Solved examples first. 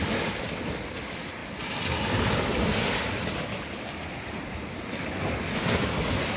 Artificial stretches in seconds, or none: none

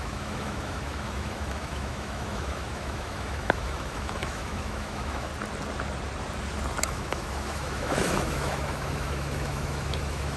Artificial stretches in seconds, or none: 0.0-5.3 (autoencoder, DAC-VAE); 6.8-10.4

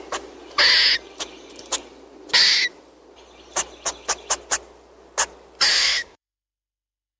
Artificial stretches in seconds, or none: 5.7-7.2 (autoencoder, DAC-VAE)

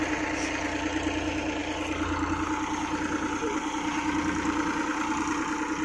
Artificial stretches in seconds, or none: none